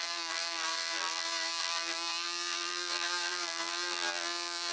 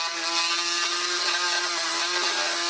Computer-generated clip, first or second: first